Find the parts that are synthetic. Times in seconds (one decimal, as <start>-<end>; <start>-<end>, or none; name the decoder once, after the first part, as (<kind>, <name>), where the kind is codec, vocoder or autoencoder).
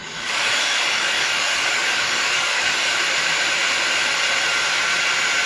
0.0-2.9 (codec, DAC)